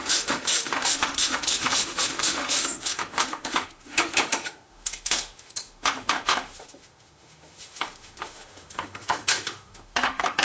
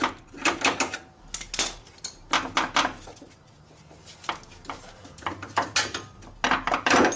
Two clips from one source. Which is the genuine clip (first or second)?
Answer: second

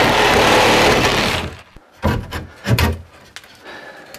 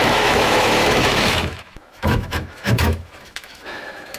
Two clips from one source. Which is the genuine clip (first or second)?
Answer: first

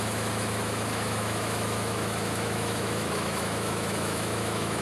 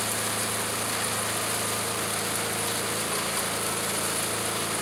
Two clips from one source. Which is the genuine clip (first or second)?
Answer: second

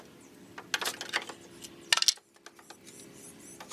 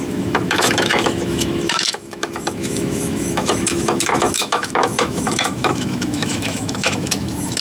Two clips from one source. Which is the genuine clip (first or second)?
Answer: first